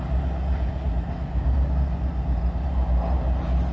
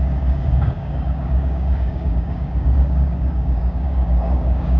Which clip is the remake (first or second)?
second